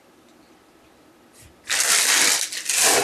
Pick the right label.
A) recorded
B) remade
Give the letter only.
A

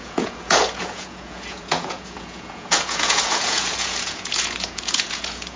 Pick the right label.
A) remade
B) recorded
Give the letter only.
A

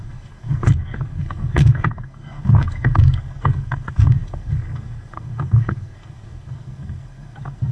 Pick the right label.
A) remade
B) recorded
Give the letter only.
A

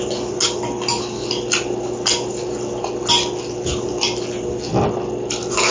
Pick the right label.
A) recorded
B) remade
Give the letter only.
A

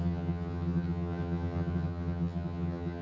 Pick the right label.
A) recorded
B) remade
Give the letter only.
B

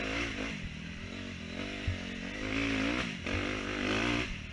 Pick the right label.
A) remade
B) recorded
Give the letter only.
B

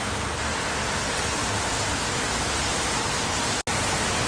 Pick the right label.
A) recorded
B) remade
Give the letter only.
A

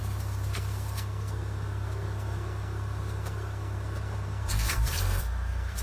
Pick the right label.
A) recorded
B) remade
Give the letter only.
B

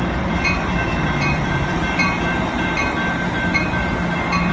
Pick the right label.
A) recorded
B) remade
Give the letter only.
B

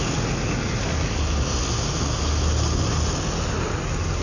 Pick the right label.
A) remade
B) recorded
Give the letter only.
B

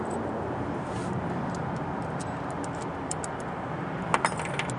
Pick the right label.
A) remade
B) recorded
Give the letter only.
B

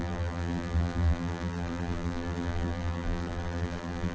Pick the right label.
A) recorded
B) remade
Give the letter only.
B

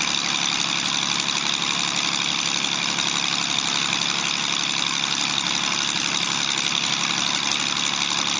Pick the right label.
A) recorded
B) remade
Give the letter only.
A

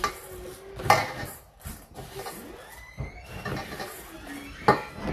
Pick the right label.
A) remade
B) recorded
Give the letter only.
B